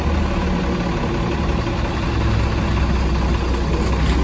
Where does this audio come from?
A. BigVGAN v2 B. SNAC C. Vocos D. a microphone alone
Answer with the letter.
D